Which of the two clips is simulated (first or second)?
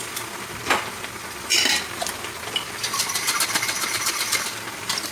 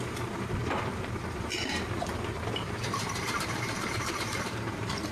second